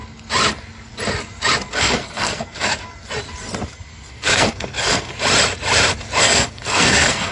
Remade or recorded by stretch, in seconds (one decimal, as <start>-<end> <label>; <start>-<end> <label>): 0.0-1.7 recorded; 1.7-2.7 remade; 2.7-4.1 recorded; 4.1-5.1 remade; 5.1-6.2 recorded; 6.2-7.3 remade